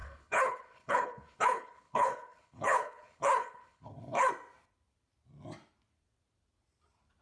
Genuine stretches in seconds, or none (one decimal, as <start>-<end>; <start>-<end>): 4.3-7.2